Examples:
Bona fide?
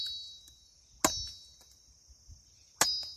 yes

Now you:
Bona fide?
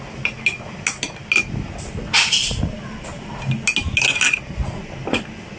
yes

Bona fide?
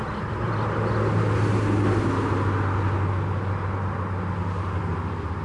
yes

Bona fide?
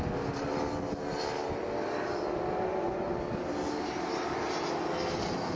yes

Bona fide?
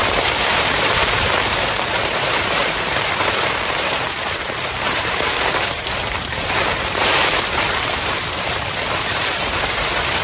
no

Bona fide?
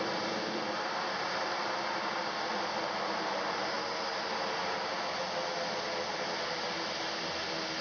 yes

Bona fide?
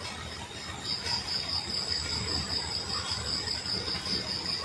yes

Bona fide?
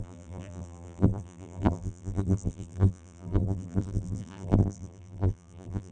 no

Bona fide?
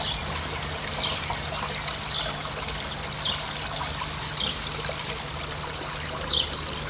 yes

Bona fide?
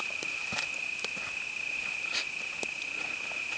yes